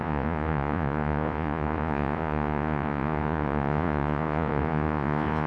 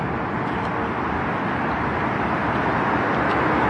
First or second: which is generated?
first